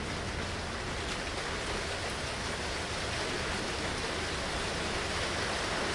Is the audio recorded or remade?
recorded